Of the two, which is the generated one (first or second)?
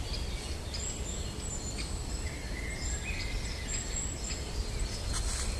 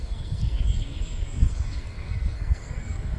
second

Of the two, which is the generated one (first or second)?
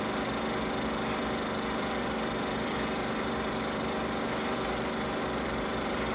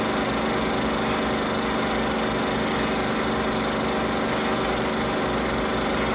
first